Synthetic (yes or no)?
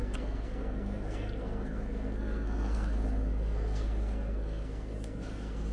yes